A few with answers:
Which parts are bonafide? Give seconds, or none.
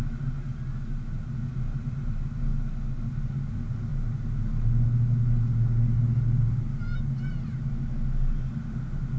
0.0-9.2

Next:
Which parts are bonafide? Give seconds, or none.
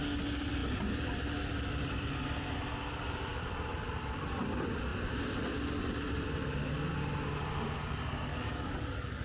0.0-8.3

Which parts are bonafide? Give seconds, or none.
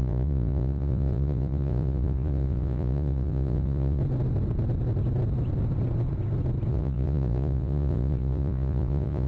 4.0-6.7